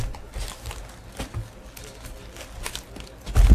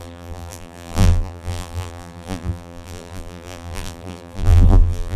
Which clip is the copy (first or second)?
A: second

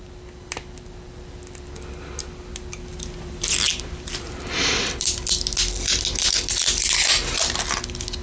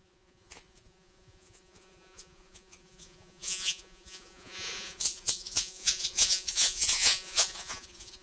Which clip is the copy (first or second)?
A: second